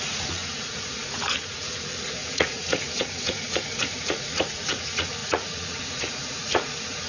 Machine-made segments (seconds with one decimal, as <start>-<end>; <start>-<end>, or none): 0.0-7.1